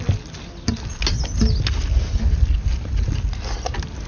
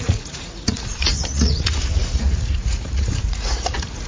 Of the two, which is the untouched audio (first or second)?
first